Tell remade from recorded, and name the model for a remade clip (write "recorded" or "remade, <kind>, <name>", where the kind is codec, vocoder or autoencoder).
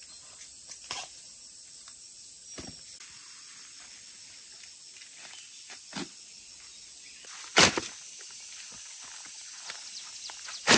recorded